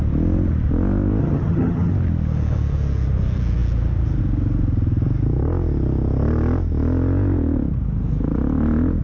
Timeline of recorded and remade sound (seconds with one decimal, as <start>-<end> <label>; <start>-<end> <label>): 0.0-1.2 recorded; 1.2-1.9 remade; 1.9-9.0 recorded